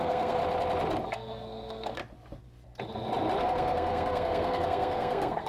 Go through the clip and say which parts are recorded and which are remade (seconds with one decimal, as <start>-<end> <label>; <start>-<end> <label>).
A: 0.0-0.4 remade; 0.4-1.1 recorded; 1.1-2.0 remade; 2.0-3.4 recorded; 3.4-5.5 remade